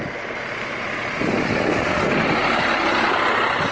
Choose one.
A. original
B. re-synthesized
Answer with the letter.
A